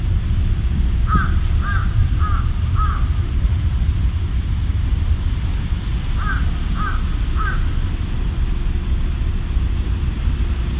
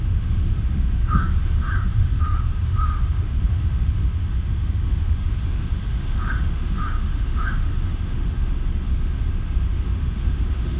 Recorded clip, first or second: first